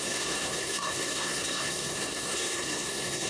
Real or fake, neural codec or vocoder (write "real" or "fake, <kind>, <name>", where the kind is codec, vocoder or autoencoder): fake, codec, SNAC